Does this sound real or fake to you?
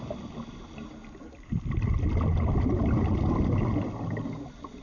real